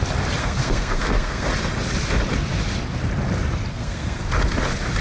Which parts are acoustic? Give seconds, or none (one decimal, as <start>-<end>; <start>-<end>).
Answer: 0.0-0.4; 1.5-3.7; 4.2-5.0